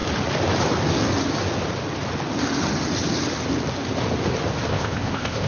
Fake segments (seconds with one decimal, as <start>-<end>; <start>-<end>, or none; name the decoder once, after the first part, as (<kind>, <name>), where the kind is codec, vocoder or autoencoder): 4.7-5.5 (codec, ZipCodec)